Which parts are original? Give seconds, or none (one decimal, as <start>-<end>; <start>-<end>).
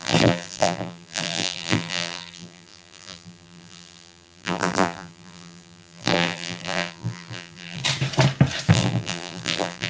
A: 7.8-8.7